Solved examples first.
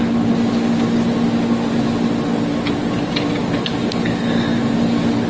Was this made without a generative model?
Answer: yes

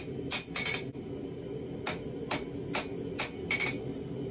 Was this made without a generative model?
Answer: yes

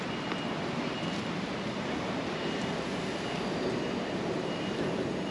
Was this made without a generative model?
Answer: yes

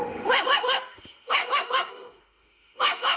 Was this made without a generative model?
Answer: no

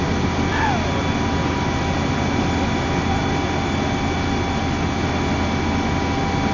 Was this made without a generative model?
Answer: yes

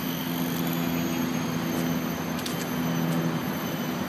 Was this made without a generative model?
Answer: yes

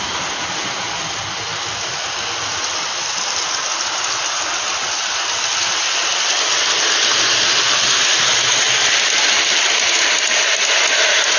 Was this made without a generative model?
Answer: yes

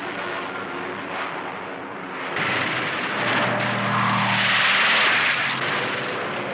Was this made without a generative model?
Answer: yes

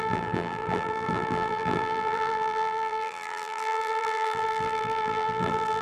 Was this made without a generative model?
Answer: no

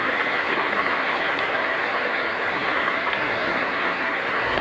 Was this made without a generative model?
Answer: no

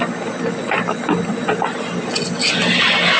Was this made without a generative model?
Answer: yes